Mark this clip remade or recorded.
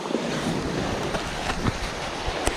remade